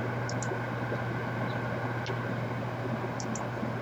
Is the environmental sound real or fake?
real